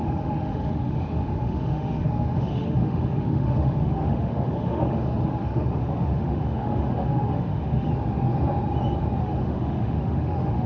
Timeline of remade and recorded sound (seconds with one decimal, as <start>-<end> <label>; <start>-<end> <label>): 0.0-7.9 remade; 7.9-9.2 recorded; 9.2-10.7 remade